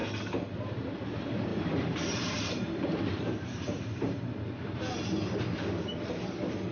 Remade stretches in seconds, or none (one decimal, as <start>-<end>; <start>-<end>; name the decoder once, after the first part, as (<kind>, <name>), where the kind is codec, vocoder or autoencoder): 1.5-5.0 (vocoder, BigVGAN v2)